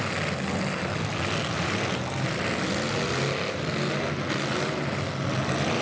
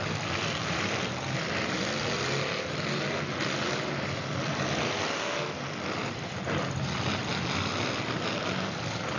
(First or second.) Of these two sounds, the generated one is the second